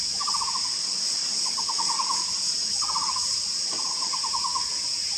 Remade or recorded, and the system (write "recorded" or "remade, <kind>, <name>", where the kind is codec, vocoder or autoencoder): recorded